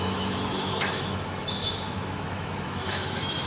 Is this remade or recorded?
remade